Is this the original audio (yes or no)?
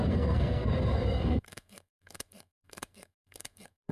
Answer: no